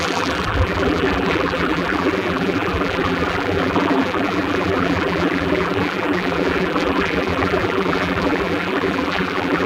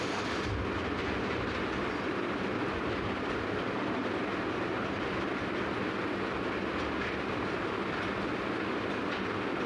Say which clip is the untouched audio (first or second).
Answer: second